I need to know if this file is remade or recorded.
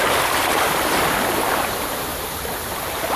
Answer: recorded